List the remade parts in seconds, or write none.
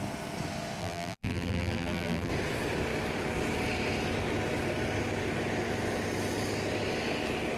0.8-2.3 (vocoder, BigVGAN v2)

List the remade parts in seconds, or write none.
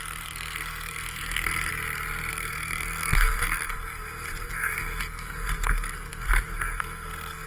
0.0-1.7 (codec, SNAC); 2.3-7.5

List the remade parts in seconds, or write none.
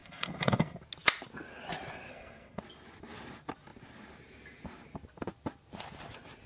0.0-0.8 (codec, SNAC); 2.1-2.6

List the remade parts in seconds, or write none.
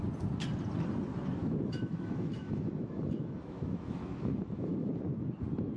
1.4-4.9 (autoencoder, DAC-VAE)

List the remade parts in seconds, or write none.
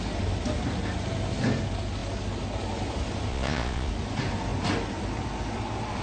3.3-3.9 (vocoder, Vocos)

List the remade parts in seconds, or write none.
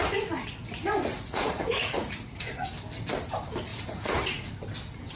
1.1-2.7 (vocoder, Vocos); 3.7-4.5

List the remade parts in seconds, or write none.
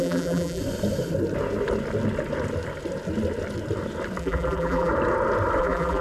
0.0-0.6 (vocoder, BigVGAN v2); 4.2-4.9; 5.6-6.0